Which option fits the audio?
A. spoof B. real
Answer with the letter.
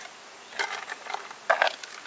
B